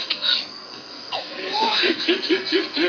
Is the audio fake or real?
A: fake